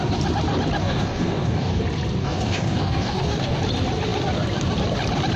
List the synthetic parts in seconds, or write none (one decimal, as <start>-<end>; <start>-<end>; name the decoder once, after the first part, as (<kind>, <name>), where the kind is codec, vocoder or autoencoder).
0.8-1.8 (codec, DAC); 2.2-3.6